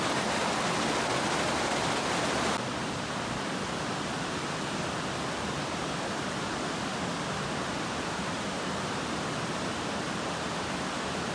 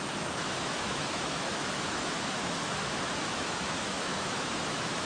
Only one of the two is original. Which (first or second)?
first